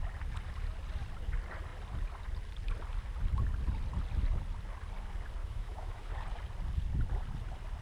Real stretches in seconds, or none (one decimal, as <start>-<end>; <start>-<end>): 0.0-5.4; 6.1-7.8